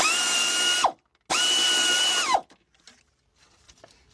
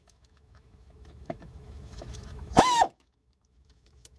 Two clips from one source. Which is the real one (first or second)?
first